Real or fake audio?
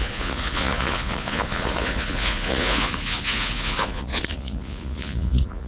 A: fake